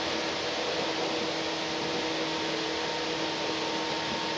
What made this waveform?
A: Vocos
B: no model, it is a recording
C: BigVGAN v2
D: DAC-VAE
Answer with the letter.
B